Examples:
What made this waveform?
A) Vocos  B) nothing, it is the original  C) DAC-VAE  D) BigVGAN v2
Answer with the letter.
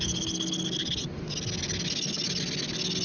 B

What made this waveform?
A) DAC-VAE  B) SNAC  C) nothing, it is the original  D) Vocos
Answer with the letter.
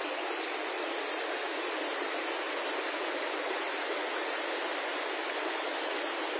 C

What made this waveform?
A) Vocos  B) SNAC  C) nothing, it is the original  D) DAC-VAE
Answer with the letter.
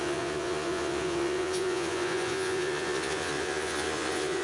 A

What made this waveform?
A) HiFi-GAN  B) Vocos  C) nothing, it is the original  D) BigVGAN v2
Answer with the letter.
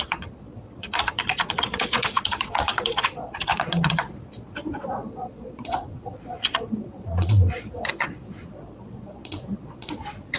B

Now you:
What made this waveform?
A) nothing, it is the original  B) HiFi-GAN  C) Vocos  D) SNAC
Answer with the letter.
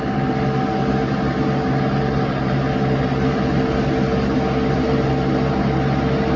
A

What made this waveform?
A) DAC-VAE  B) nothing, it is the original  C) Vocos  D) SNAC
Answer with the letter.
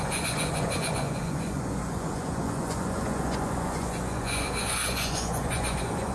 C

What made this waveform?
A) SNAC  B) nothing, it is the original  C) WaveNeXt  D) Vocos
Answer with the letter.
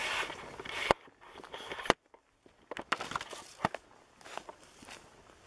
B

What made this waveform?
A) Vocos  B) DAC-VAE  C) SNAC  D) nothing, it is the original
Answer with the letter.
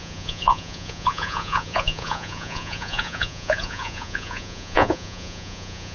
A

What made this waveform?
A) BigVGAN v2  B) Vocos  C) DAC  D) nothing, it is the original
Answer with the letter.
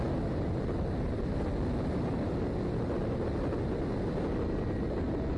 D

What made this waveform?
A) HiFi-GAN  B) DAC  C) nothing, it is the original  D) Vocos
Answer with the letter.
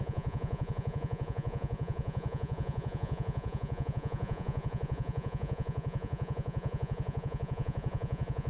D